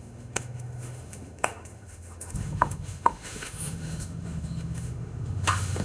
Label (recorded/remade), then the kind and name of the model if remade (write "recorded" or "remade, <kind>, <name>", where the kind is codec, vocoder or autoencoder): remade, autoencoder, DAC-VAE